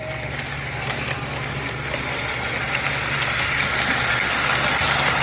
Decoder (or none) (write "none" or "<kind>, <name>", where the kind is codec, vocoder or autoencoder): none